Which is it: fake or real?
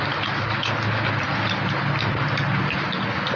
real